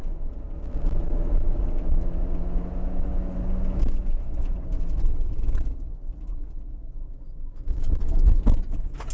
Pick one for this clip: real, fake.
real